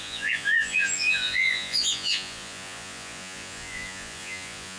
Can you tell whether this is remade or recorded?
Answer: remade